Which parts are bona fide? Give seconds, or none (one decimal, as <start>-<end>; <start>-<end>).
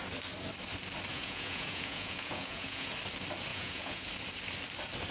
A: 0.0-1.1; 2.9-3.5; 4.0-5.1